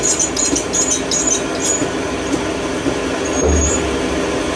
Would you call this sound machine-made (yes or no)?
no